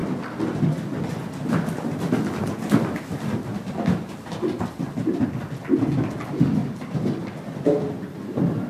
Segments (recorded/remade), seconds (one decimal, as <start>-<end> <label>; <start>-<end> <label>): 0.0-8.7 recorded